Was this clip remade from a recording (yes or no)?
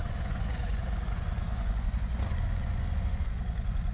yes